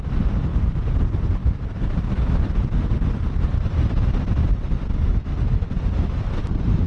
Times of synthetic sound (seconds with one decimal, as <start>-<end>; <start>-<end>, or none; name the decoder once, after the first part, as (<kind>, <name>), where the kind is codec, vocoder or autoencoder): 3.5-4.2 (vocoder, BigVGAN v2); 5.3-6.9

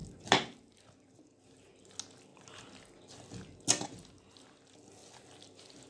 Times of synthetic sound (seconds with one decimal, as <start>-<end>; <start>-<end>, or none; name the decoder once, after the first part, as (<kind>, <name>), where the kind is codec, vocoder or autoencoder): none

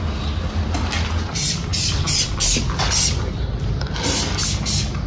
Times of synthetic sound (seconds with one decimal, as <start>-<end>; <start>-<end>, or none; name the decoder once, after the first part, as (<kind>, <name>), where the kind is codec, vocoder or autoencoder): none